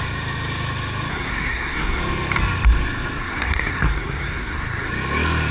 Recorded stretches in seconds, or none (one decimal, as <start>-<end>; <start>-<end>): 0.0-1.1; 2.0-3.2; 4.9-5.5